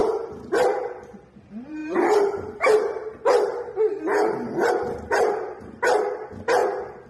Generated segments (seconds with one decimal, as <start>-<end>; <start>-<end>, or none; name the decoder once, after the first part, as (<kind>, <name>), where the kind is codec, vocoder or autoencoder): 1.1-6.6 (vocoder, BigVGAN v2)